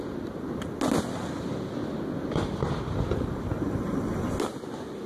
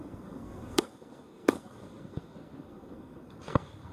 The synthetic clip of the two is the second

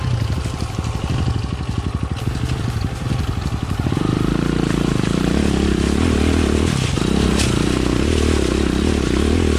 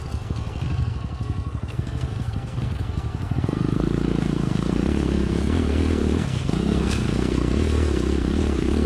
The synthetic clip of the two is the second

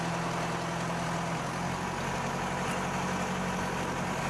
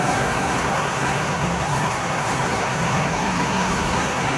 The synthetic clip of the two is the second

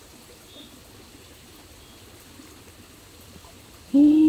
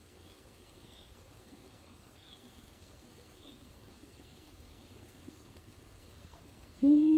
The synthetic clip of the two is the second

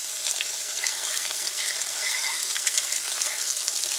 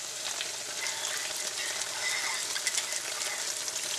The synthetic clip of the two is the first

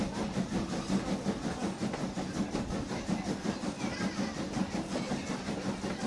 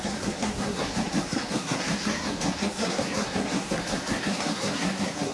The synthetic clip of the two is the second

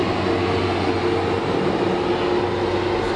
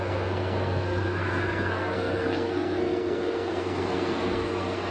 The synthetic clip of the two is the second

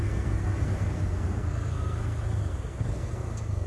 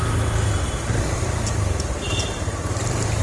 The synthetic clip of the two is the first